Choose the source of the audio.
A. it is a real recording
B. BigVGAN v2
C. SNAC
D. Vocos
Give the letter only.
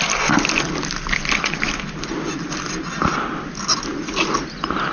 A